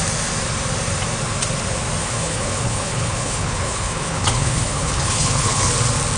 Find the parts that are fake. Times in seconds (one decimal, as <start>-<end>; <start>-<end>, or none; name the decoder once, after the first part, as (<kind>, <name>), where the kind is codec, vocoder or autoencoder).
2.0-5.7 (codec, HILCodec)